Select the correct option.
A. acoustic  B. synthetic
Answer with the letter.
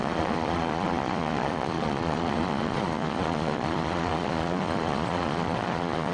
B